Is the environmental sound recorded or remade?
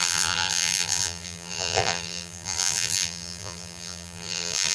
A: remade